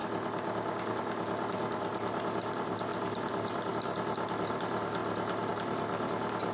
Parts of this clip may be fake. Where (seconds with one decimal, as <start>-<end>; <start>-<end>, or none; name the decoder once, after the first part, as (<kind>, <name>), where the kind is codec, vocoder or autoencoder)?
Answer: none